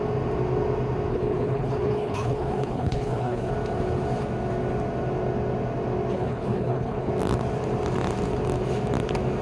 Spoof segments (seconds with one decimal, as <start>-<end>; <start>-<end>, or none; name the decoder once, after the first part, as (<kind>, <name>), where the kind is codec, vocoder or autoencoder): 1.1-3.5 (codec, HILCodec); 6.1-7.1